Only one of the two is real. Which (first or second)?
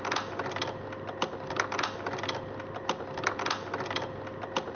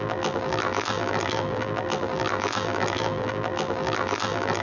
first